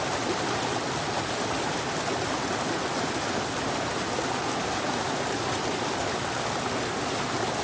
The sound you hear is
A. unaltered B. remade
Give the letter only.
A